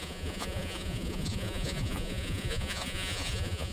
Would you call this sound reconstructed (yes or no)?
yes